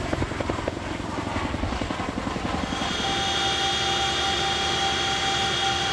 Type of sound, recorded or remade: recorded